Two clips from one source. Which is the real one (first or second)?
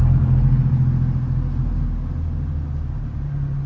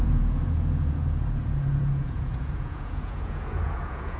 first